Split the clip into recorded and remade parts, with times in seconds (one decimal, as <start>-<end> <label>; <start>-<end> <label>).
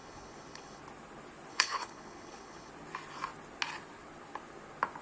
0.0-0.8 remade; 0.8-1.5 recorded; 1.5-2.7 remade; 2.7-5.0 recorded